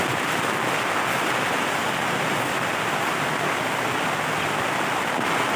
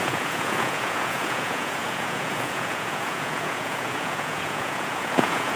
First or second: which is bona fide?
first